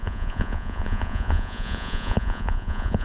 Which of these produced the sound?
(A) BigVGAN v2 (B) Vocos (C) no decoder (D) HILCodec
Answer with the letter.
B